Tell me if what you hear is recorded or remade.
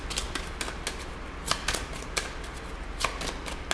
recorded